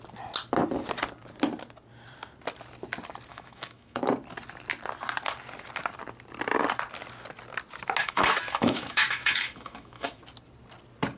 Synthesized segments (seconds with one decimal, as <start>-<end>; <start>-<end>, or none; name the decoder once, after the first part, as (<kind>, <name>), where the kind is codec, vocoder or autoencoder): 3.3-4.0 (autoencoder, DAC-VAE); 8.0-10.2